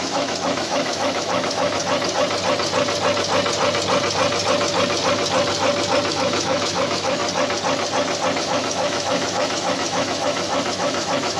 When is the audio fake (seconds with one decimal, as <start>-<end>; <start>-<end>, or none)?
0.0-1.8; 6.1-7.2; 8.4-11.4